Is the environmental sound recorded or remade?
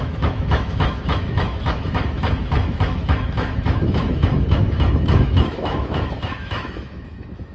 remade